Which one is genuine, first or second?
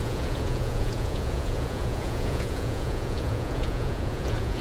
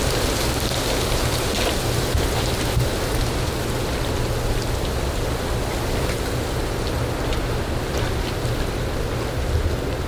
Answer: second